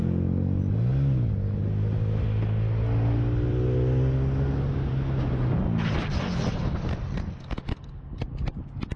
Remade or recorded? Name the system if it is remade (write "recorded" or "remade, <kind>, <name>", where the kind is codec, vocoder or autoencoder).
recorded